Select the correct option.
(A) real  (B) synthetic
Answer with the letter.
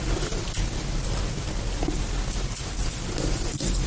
A